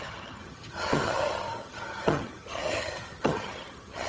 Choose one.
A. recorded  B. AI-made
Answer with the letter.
B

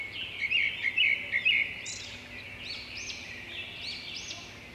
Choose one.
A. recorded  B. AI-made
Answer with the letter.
A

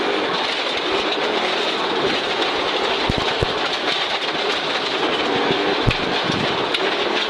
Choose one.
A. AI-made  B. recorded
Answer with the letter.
B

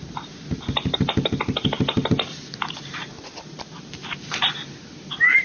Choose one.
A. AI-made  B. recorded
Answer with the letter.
B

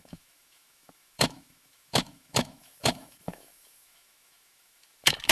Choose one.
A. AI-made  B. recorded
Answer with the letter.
A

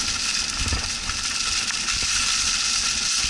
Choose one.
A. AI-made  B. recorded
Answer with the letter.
B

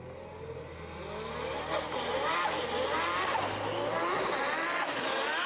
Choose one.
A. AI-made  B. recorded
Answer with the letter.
B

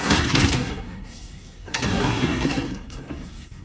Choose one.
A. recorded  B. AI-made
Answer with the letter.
B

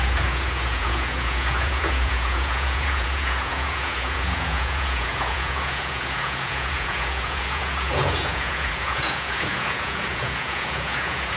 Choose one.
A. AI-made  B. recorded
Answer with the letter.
A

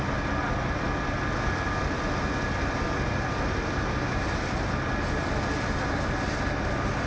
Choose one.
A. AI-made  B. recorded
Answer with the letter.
B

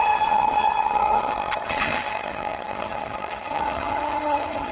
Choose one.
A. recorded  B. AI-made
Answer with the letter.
B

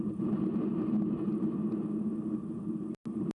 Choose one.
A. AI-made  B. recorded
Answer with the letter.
B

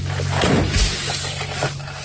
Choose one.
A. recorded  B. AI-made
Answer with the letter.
A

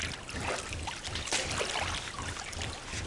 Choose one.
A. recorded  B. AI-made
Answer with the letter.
A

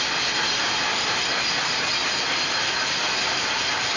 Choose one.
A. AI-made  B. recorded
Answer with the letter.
B